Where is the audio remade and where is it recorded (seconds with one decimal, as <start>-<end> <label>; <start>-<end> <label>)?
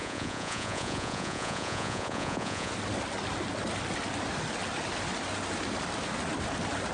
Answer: 0.0-2.7 remade; 2.7-6.9 recorded